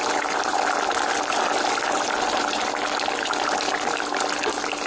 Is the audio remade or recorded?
recorded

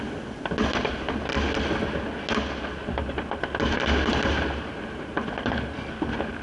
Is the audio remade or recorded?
recorded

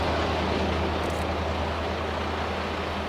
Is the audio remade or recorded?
recorded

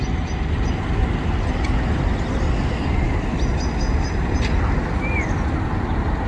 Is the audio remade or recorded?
recorded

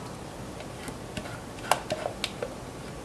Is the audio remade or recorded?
recorded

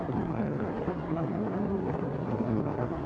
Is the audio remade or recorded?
remade